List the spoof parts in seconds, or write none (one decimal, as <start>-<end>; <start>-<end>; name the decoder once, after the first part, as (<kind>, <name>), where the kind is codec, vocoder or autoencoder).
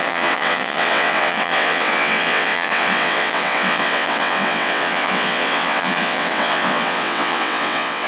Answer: 0.0-8.1 (vocoder, WaveNeXt)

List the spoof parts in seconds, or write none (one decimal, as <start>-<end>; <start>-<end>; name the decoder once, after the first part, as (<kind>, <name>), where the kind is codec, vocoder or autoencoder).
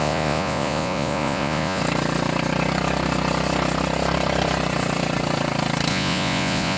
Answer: 0.0-1.8 (vocoder, Vocos); 5.9-6.8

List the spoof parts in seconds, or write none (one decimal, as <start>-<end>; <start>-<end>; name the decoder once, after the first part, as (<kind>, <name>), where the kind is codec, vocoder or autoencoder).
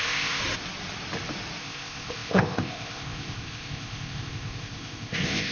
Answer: 0.0-0.4 (codec, ZipCodec); 1.6-5.5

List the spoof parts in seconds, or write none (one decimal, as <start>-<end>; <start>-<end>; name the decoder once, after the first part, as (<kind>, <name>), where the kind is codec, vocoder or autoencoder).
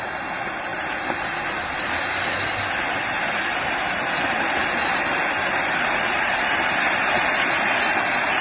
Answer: 0.7-2.0 (vocoder, BigVGAN v2); 3.5-7.3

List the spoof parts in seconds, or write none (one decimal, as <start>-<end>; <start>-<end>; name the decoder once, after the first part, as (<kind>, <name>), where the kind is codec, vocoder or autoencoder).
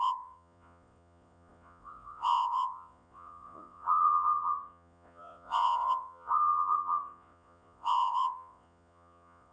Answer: 0.0-9.5 (vocoder, Vocos)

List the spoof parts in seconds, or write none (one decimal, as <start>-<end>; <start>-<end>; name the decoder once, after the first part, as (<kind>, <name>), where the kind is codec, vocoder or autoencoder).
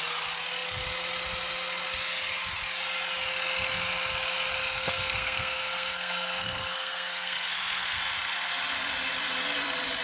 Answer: 4.6-8.0 (codec, SNAC)